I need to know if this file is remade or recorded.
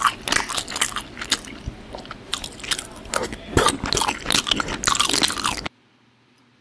recorded